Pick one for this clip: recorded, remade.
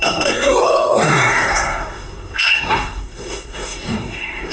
remade